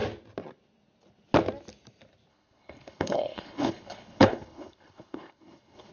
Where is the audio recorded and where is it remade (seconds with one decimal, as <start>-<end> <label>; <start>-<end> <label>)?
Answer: 0.0-2.3 recorded; 2.3-5.9 remade